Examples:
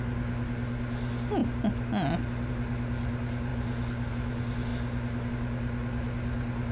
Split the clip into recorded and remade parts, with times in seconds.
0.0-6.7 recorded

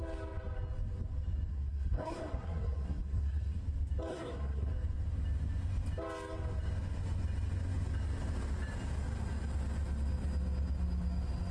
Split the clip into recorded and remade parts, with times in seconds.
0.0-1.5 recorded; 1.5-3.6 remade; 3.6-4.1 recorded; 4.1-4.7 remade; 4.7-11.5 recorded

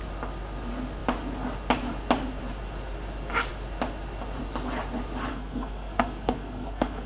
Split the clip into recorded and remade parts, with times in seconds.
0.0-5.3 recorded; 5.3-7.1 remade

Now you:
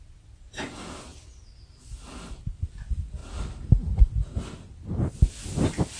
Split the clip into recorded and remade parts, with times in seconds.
0.0-6.0 recorded

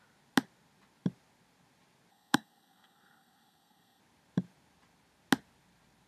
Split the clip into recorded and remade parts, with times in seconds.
0.0-2.1 recorded; 2.1-4.0 remade; 4.0-6.1 recorded